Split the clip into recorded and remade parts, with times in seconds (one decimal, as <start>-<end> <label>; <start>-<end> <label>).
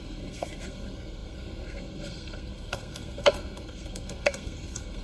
0.0-5.0 remade